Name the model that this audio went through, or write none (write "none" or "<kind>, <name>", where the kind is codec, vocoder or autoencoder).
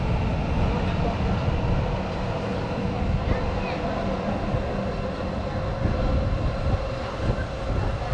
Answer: none